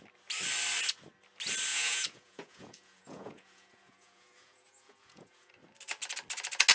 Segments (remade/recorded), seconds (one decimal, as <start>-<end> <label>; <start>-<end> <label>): 0.0-1.7 recorded; 1.7-5.5 remade; 5.5-6.7 recorded